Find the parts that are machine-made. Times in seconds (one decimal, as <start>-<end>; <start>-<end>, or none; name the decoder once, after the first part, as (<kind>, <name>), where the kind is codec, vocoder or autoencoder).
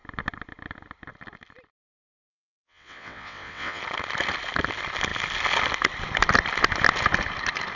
2.3-3.8 (vocoder, WaveNeXt)